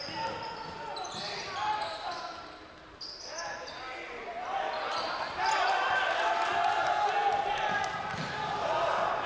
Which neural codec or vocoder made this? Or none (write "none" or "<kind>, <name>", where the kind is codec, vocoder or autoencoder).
none